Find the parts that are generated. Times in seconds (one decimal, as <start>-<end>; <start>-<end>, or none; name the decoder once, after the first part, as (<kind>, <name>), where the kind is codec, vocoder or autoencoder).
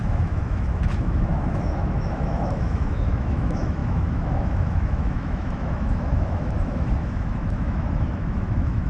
0.0-8.9 (autoencoder, DAC-VAE)